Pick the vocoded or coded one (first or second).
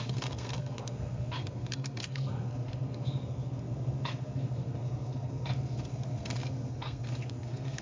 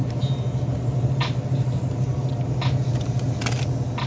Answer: first